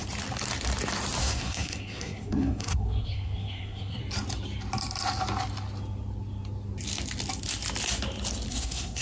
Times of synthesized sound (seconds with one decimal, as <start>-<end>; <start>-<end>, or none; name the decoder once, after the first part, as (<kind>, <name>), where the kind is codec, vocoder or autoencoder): 1.2-4.0 (codec, SNAC); 8.5-9.0

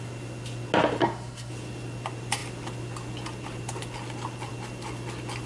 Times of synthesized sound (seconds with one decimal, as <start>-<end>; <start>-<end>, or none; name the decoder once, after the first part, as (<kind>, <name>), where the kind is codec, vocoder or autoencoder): 1.0-1.5 (codec, SNAC)

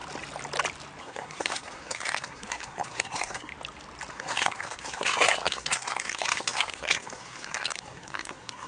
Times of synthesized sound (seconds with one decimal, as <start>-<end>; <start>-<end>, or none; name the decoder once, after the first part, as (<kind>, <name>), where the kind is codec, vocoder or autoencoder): 1.0-3.5 (codec, SNAC); 4.1-8.7